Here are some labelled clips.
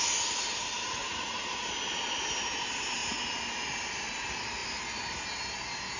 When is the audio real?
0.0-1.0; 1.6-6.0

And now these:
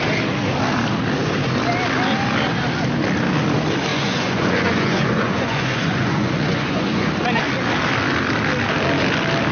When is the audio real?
0.0-3.9; 7.1-9.5

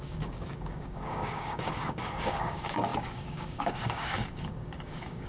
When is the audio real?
none

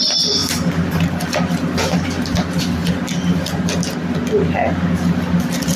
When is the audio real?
0.0-5.8

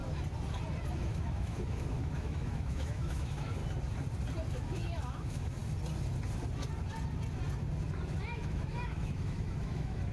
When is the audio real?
0.0-0.9; 3.6-4.5; 5.6-8.3

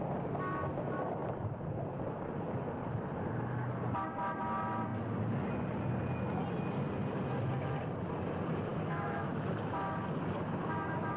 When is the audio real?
0.0-8.7; 9.5-11.2

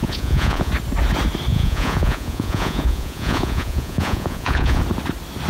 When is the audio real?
0.7-1.5; 4.8-5.5

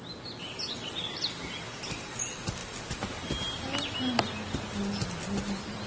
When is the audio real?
0.0-5.9